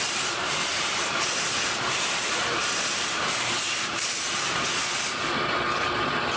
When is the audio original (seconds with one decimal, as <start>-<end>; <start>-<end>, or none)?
0.0-0.7; 4.5-6.4